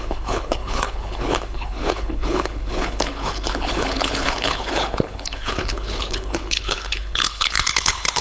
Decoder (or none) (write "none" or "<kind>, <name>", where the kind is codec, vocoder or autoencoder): codec, HILCodec